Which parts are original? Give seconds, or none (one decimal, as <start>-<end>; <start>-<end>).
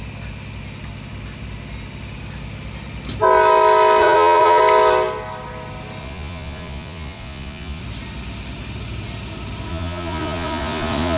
0.0-4.0; 4.6-6.0; 7.8-9.7